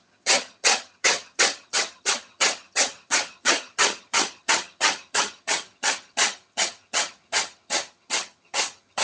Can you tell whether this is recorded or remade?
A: remade